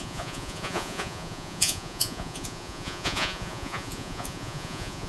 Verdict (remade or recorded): remade